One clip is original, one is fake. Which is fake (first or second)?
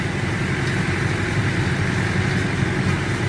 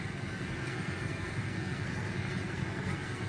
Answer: second